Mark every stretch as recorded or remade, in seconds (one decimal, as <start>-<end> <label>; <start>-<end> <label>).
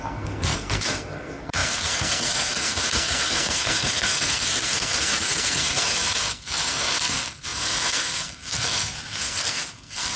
0.0-10.2 remade